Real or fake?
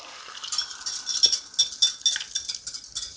real